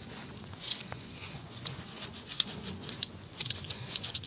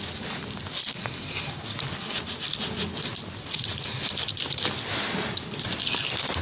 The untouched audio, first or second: second